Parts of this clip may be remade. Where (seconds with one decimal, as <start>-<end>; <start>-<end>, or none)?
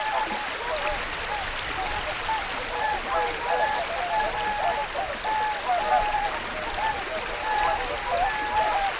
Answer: none